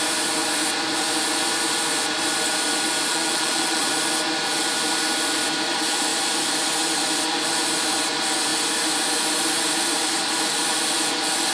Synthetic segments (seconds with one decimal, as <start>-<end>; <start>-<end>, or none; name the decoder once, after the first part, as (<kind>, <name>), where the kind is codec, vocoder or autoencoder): 3.1-3.9 (vocoder, Vocos)